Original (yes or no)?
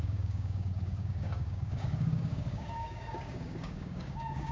no